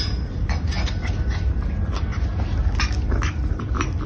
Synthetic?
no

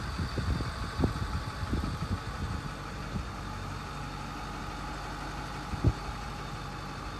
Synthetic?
no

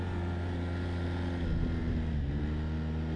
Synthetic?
no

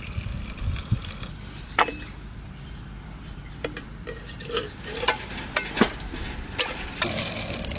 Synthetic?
yes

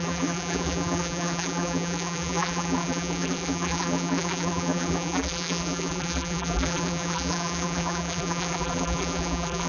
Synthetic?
yes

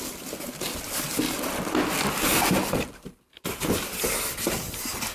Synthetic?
no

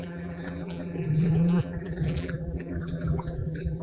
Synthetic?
yes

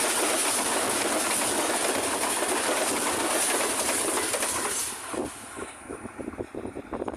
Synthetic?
no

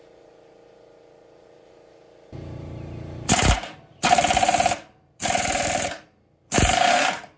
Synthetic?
yes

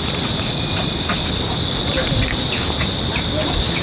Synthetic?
yes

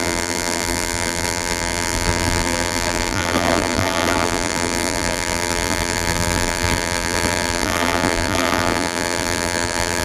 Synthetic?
yes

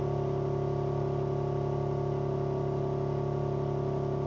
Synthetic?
no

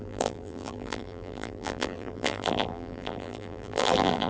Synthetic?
yes